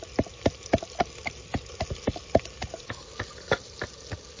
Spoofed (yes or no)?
no